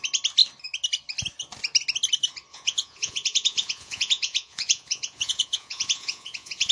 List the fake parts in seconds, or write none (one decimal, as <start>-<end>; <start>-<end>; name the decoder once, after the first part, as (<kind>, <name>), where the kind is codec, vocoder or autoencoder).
2.5-6.7 (vocoder, Vocos)